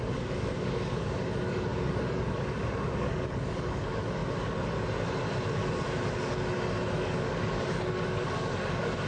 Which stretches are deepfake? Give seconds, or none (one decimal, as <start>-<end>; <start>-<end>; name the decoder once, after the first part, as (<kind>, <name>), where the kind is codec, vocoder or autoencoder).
0.0-4.2 (codec, DAC); 6.9-9.1